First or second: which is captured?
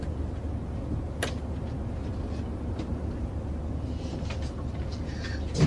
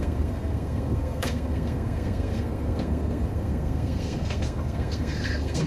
first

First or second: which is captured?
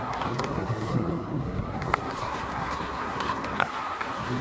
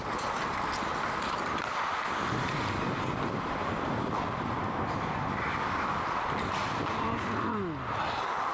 second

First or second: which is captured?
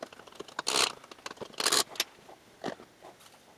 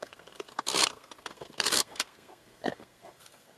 first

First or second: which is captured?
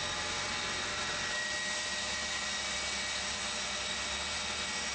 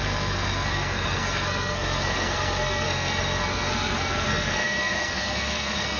first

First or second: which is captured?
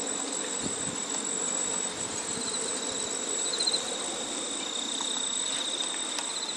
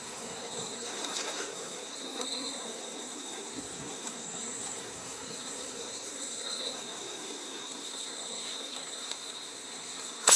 first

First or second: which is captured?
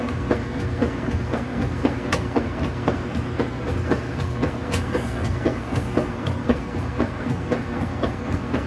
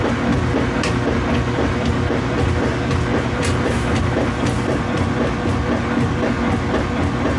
second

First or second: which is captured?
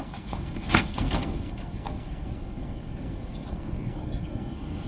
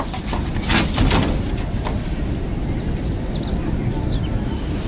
second